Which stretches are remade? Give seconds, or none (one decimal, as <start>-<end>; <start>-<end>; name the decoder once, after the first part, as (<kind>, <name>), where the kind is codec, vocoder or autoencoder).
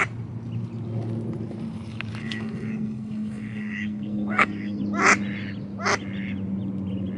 2.2-4.8 (codec, SNAC)